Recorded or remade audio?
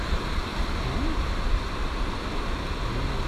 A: recorded